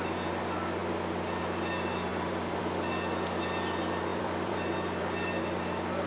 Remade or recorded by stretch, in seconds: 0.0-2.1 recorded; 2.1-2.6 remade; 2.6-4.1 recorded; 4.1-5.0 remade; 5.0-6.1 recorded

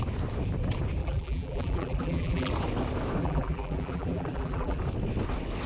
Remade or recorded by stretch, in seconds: 0.0-1.0 recorded; 1.0-2.5 remade; 2.5-3.2 recorded; 3.2-4.8 remade; 4.8-5.7 recorded

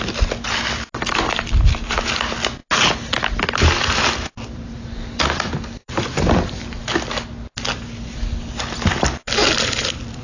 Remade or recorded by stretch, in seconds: 0.0-10.2 recorded

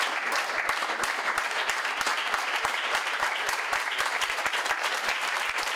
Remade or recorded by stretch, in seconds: 0.0-2.1 recorded; 2.1-5.8 remade

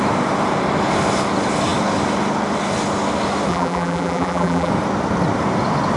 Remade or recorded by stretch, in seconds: 0.0-3.5 recorded; 3.5-4.7 remade; 4.7-6.0 recorded